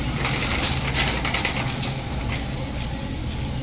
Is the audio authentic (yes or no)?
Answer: yes